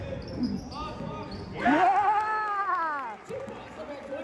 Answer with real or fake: real